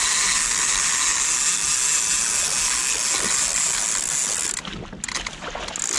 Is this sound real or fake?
real